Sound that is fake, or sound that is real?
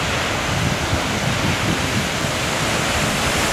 real